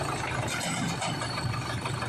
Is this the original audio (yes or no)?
yes